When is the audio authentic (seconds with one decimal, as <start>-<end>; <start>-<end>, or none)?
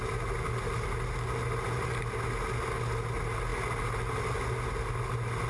0.0-5.5